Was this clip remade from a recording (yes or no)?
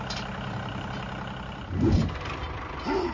no